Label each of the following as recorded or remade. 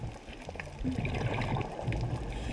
recorded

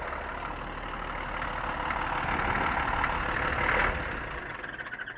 recorded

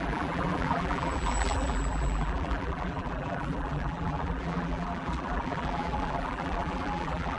remade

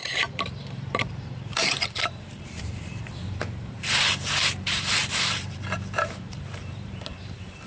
remade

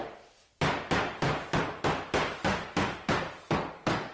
remade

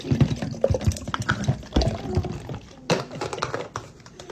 recorded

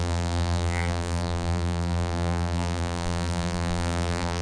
remade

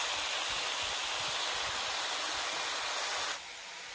recorded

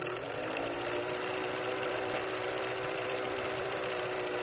remade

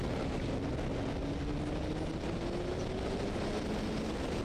recorded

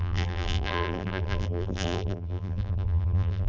remade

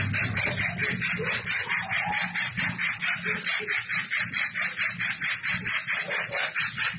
recorded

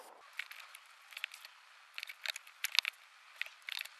recorded